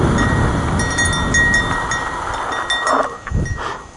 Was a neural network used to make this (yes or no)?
no